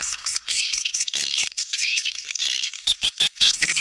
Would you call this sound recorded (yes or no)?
no